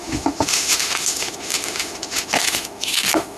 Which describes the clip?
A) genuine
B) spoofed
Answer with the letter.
B